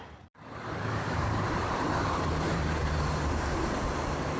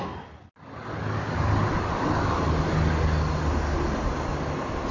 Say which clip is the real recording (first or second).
second